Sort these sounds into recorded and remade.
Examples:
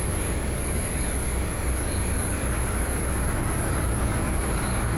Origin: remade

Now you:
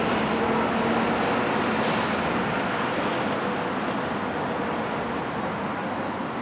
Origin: recorded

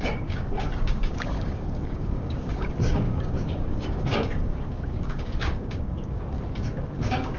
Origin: remade